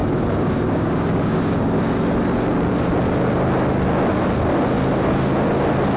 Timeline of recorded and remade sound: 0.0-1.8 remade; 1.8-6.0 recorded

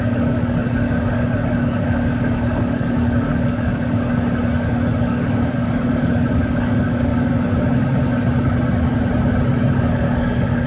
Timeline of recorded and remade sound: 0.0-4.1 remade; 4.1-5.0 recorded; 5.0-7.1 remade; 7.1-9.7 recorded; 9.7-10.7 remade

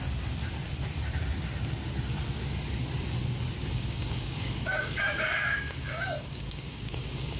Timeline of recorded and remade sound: 0.0-3.6 recorded; 3.6-7.4 remade

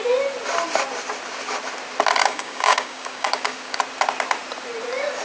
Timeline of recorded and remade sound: 0.0-2.2 recorded; 2.2-3.8 remade; 3.8-5.2 recorded

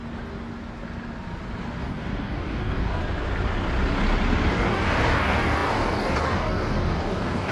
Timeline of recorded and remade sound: 0.0-1.8 recorded; 1.8-3.0 remade; 3.0-4.5 recorded; 4.5-7.5 remade

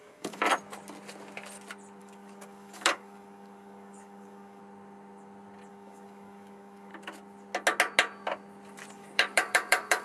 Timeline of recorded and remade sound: 0.0-0.4 remade; 0.4-2.0 recorded; 2.0-4.6 remade; 4.6-5.7 recorded; 5.7-6.9 remade; 6.9-8.9 recorded; 8.9-10.0 remade

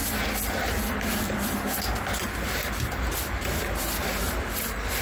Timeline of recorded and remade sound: 0.0-5.0 recorded

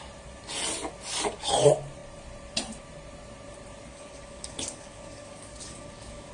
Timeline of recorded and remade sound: 0.0-3.9 recorded; 3.9-6.3 remade